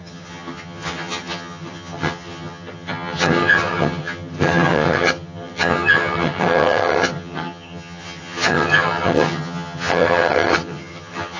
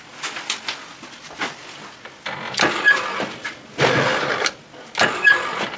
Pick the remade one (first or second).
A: first